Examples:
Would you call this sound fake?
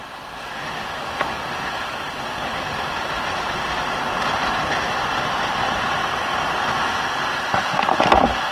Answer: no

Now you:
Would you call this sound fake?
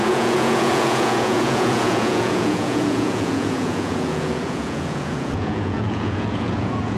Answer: yes